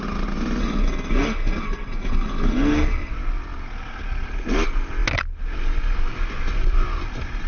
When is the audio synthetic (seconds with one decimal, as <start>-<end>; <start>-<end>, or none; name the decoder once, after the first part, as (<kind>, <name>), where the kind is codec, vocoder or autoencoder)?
0.6-3.1 (codec, SNAC)